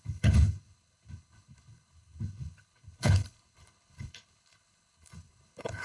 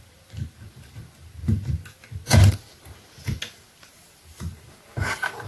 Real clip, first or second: second